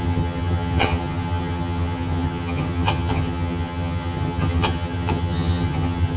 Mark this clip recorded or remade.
remade